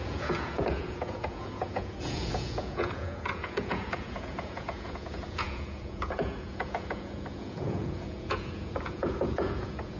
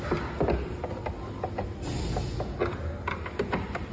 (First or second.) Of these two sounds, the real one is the second